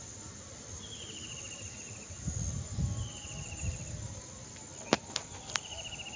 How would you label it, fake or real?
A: real